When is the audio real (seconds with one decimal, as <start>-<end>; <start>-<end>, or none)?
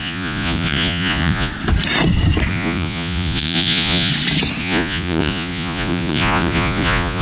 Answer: 1.5-2.5; 4.1-4.6